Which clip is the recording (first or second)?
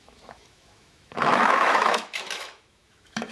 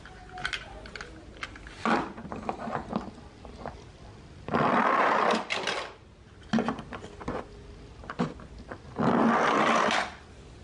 second